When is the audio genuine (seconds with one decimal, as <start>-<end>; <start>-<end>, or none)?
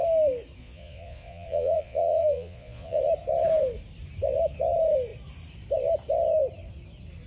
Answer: 0.0-0.6; 3.0-7.3